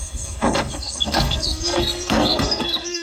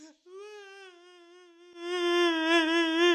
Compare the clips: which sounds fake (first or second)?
first